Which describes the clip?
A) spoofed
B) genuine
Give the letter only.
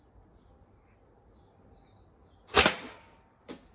B